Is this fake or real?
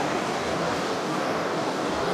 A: fake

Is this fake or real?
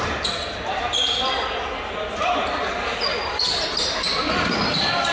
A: real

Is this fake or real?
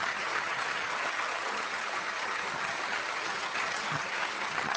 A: fake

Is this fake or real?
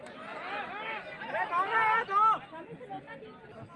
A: real